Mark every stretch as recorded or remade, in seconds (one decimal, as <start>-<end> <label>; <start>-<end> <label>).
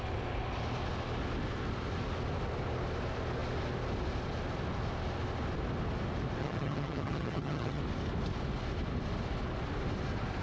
0.0-6.4 recorded; 6.4-7.8 remade; 7.8-10.4 recorded